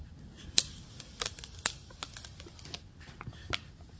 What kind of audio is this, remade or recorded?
recorded